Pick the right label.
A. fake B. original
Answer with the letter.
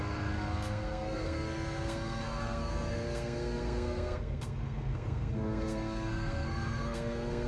A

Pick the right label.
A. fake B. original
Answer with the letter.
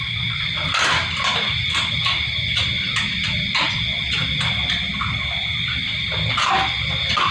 B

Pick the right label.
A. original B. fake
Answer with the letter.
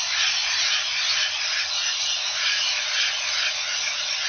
A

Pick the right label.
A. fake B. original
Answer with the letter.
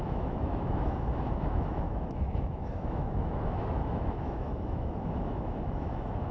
A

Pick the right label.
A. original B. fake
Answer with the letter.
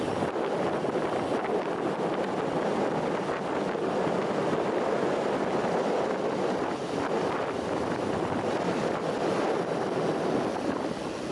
A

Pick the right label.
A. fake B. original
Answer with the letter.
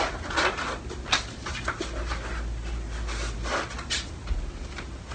B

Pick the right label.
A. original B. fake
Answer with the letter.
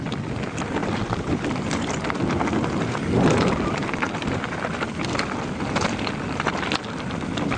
A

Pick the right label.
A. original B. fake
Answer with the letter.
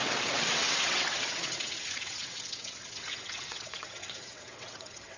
B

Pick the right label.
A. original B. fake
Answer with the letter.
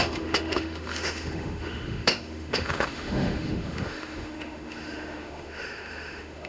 B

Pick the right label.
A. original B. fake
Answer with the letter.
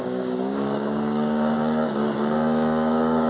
B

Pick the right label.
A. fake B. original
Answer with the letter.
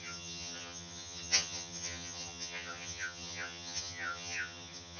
A